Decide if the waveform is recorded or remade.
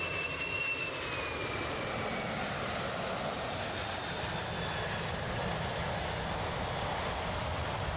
recorded